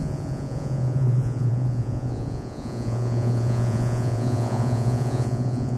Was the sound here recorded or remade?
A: remade